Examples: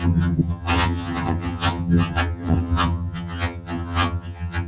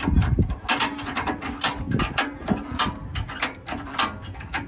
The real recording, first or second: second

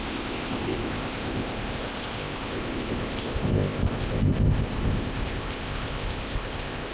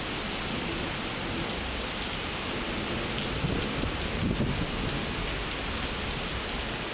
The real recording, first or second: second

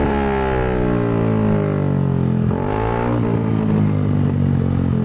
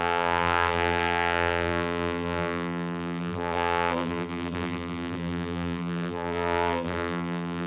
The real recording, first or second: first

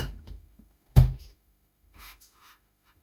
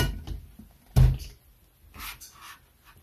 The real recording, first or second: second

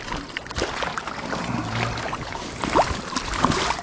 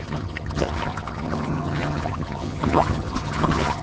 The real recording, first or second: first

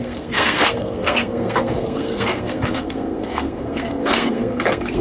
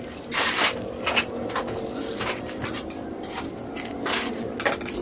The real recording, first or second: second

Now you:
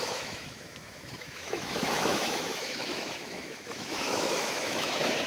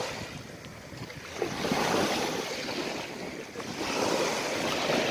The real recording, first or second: second